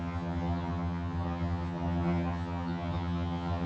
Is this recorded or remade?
remade